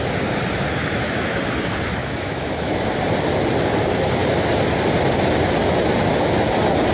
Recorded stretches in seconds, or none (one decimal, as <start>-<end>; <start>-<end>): 0.0-0.8; 1.4-2.0; 2.9-6.9